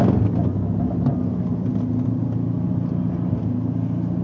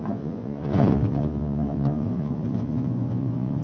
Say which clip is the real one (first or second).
first